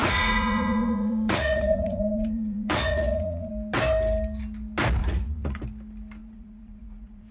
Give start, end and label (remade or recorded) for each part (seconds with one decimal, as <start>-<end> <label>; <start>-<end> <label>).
0.0-3.5 remade; 3.5-5.0 recorded; 5.0-5.6 remade; 5.6-6.2 recorded; 6.2-7.3 remade